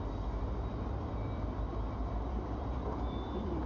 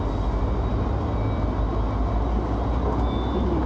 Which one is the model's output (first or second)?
first